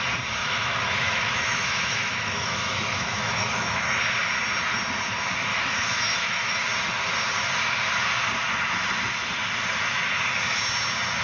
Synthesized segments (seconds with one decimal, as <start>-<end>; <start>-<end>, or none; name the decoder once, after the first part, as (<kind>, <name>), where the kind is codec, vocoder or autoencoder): 0.4-4.0 (autoencoder, DAC-VAE); 5.5-6.6